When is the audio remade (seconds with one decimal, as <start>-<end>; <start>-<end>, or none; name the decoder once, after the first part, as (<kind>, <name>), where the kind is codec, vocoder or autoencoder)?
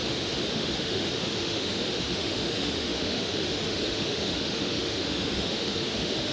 0.0-6.3 (autoencoder, DAC-VAE)